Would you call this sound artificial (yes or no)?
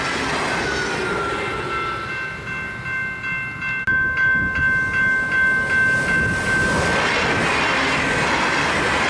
no